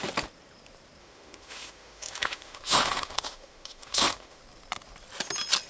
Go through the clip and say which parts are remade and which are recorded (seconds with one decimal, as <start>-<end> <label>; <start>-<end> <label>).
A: 0.0-1.0 recorded; 1.0-4.4 remade; 4.4-5.7 recorded